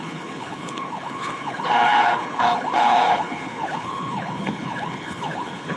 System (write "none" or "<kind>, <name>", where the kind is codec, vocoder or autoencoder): codec, HILCodec